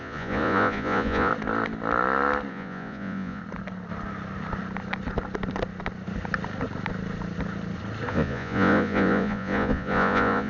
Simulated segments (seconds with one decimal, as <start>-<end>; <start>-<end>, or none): 0.0-1.3; 2.5-3.4; 8.1-10.5